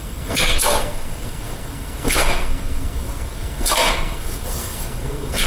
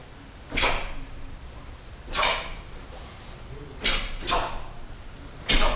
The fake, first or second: first